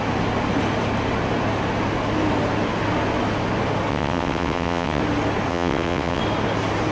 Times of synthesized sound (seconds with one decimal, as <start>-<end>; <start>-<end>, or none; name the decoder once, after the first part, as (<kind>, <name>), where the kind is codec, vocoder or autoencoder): 3.9-5.0 (vocoder, WaveNeXt); 5.5-6.2